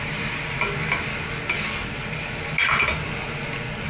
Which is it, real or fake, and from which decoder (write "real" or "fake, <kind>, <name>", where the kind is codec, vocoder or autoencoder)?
real